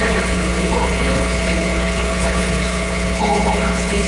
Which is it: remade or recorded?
remade